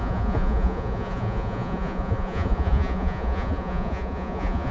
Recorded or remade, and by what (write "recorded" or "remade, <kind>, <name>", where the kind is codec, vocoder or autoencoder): remade, vocoder, Vocos